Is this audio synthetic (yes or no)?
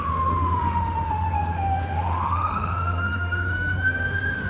yes